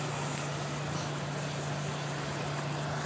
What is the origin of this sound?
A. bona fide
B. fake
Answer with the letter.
A